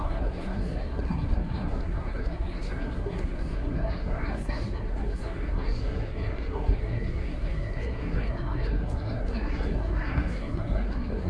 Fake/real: fake